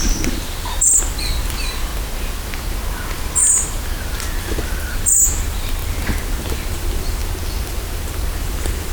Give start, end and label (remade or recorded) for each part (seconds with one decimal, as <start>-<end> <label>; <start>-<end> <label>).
0.0-1.9 remade; 1.9-4.8 recorded; 4.8-7.2 remade; 7.2-8.4 recorded; 8.4-8.9 remade